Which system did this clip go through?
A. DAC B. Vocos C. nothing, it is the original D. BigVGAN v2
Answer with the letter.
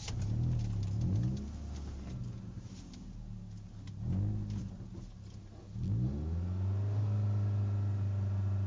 C